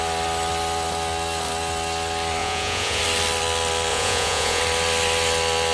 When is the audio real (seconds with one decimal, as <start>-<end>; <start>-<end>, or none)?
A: 0.0-2.4; 3.0-3.9; 4.6-5.7